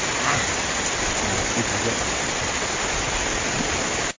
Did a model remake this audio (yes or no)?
no